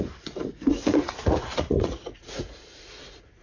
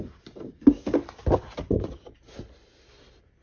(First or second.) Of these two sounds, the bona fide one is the second